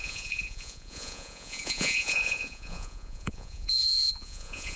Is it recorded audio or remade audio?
remade